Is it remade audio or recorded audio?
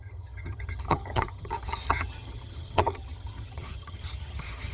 remade